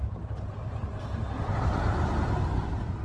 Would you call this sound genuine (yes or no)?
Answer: no